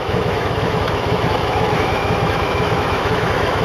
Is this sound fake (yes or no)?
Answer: yes